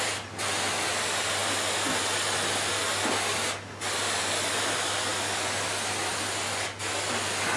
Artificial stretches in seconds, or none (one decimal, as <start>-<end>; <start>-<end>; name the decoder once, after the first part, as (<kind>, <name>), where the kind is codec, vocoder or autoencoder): none